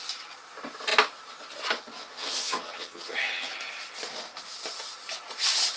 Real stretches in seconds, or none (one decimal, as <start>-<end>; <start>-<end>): 0.0-2.1; 3.5-5.8